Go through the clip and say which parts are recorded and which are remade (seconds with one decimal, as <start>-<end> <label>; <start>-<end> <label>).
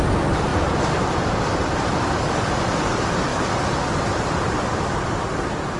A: 0.0-0.5 remade; 0.5-2.0 recorded; 2.0-5.8 remade